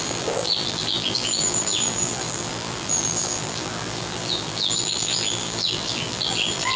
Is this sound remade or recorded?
remade